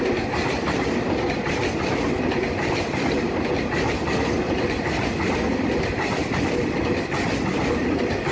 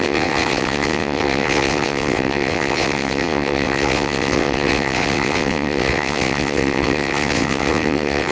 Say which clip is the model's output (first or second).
second